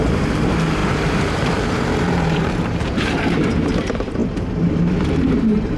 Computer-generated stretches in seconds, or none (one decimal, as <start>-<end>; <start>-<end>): 0.0-4.2; 5.1-5.8